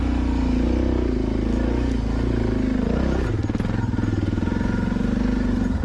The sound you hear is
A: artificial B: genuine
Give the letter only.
B